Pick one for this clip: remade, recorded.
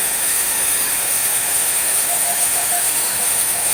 remade